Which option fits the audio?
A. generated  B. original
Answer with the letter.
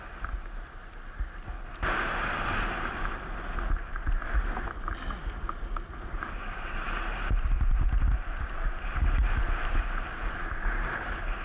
B